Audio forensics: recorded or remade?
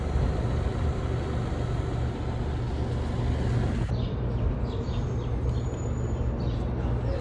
recorded